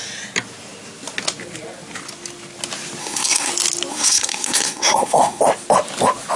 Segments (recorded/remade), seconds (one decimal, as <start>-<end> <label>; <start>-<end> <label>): 0.0-3.0 recorded; 3.0-3.5 remade; 3.5-3.9 recorded; 3.9-5.4 remade; 5.4-6.4 recorded